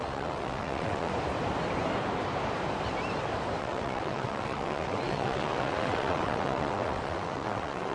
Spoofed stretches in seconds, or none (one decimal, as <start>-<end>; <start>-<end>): 0.0-1.1; 3.6-7.9

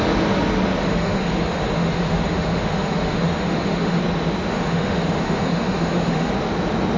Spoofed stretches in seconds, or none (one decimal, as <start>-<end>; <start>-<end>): 0.8-4.0; 4.5-6.3

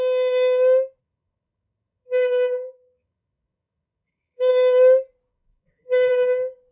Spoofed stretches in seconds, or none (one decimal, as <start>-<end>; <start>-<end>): 1.0-4.5; 5.3-6.1